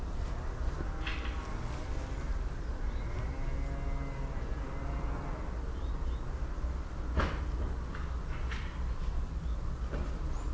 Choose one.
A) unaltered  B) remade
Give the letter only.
A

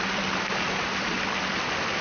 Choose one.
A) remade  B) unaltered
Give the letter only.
B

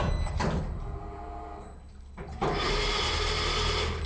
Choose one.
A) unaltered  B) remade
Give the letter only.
A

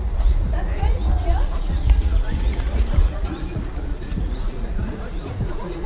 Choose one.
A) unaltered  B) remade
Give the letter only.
B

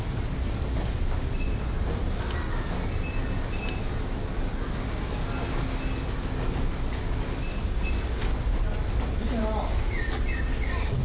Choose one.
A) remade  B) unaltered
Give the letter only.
B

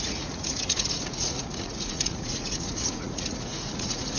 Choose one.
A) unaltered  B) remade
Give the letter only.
B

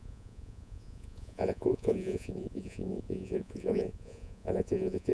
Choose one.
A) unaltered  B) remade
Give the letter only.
B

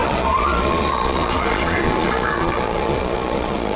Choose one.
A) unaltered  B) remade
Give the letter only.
B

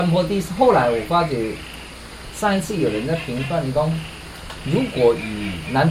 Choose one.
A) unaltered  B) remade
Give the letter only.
A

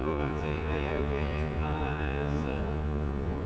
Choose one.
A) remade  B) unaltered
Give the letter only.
A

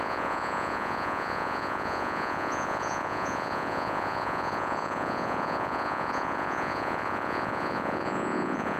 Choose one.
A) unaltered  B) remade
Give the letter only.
B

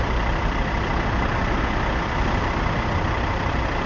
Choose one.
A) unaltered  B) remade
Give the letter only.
A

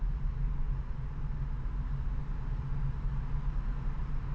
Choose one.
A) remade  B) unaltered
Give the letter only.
B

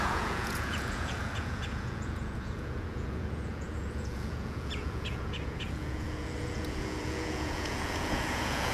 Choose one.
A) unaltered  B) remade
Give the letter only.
B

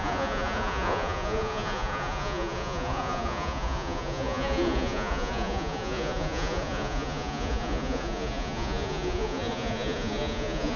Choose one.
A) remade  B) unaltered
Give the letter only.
A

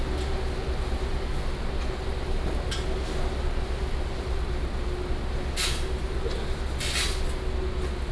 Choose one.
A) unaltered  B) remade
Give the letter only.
A